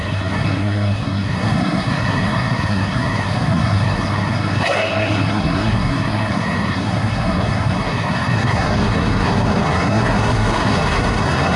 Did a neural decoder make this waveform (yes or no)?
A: yes